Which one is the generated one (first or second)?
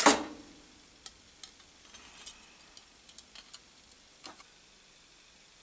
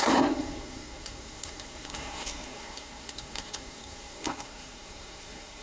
second